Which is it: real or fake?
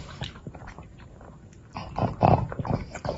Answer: fake